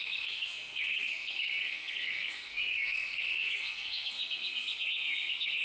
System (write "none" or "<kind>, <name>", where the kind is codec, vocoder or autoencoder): codec, SNAC